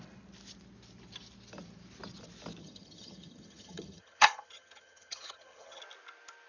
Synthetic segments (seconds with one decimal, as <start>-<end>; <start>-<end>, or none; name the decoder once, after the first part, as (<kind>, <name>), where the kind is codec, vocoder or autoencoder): 2.6-5.8 (vocoder, HiFi-GAN)